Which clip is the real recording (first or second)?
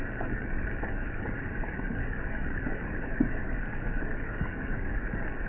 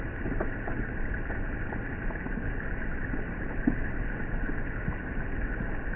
second